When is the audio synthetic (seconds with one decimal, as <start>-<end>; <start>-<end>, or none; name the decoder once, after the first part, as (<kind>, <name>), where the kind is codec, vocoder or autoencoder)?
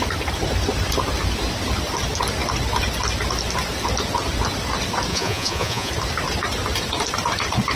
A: 5.1-5.9 (vocoder, Vocos)